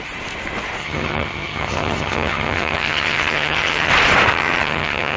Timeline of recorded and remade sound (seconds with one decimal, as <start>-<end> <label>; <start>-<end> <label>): 0.0-0.8 recorded; 0.8-3.9 remade; 3.9-4.3 recorded; 4.3-5.2 remade